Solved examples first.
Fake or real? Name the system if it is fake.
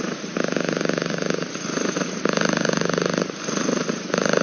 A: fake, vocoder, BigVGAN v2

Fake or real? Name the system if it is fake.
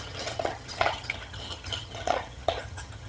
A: fake, vocoder, HiFi-GAN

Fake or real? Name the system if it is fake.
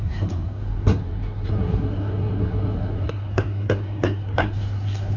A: fake, codec, SNAC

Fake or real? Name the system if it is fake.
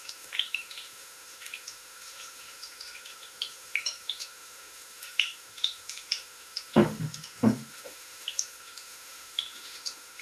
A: fake, autoencoder, DAC-VAE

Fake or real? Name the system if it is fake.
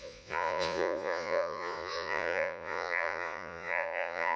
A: fake, vocoder, Vocos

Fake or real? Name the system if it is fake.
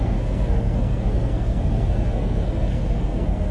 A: fake, codec, SNAC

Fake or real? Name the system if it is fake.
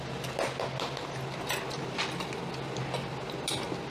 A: real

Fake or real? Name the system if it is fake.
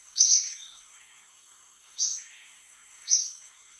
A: fake, codec, SNAC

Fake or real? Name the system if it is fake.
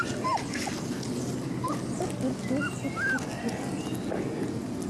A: real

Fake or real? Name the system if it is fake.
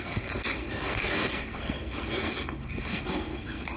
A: fake, codec, SNAC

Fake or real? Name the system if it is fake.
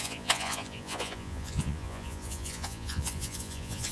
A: fake, vocoder, Vocos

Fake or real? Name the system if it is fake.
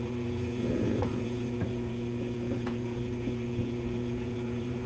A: fake, vocoder, Vocos